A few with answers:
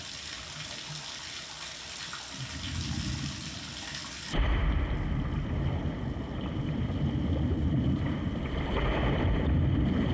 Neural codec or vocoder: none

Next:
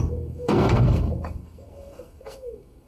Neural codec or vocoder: codec, SNAC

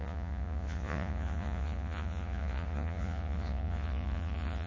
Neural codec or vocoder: vocoder, Vocos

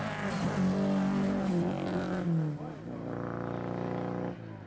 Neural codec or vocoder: none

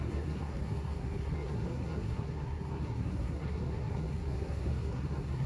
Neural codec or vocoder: codec, SNAC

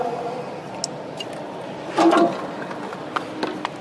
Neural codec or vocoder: none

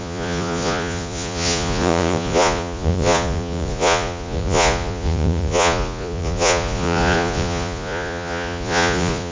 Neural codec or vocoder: vocoder, Vocos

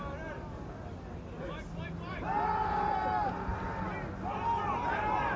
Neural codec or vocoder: none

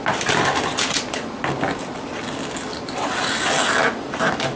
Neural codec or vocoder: none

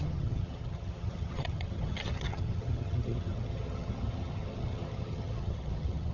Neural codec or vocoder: vocoder, HiFi-GAN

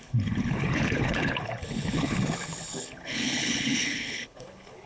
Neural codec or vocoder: codec, HILCodec